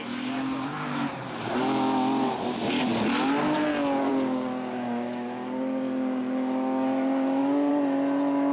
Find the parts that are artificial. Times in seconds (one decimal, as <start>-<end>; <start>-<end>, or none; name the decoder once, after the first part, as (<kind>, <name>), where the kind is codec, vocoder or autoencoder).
4.1-7.7 (codec, DAC)